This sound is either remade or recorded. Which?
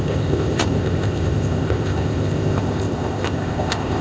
remade